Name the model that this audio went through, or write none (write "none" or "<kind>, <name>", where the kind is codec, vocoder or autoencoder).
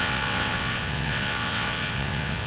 vocoder, WaveNeXt